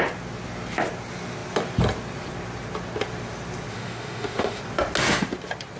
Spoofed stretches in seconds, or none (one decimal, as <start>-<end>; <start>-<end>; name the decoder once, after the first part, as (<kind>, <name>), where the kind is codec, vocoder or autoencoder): 3.7-4.6 (autoencoder, DAC-VAE)